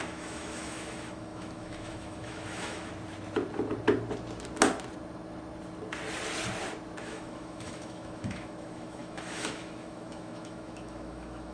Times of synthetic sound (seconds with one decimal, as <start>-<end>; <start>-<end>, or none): 0.0-2.9; 7.0-11.5